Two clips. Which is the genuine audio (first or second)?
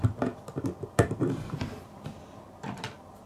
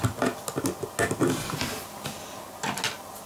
second